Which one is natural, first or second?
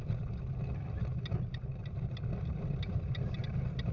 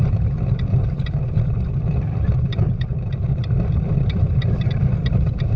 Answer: first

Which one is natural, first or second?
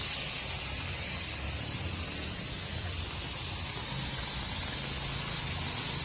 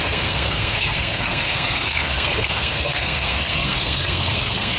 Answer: first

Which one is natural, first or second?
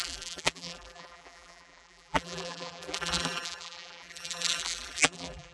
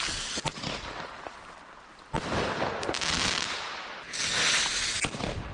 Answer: second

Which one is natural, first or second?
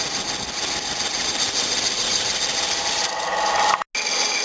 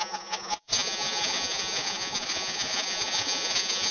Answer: first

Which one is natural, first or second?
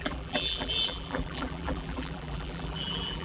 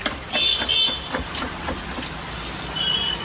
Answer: second